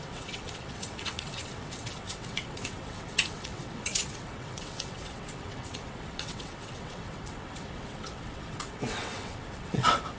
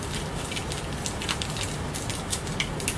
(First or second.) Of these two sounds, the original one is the second